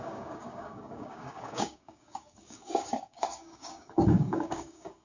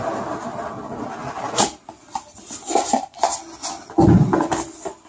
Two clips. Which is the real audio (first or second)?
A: second